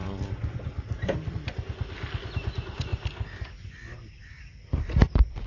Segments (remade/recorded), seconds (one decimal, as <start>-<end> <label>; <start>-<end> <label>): 0.0-5.5 recorded